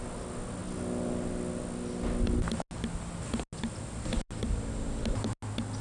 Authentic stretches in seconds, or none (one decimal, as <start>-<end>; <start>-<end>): 0.0-5.8